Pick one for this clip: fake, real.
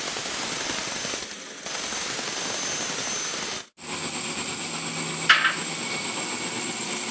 real